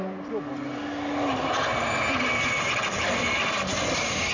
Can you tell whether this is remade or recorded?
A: recorded